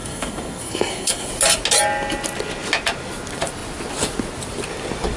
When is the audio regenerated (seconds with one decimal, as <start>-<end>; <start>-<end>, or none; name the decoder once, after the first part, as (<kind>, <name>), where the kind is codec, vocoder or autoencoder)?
0.0-1.3 (codec, SNAC)